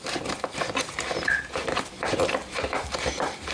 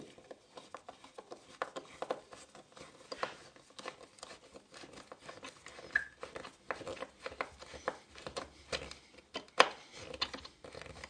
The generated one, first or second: first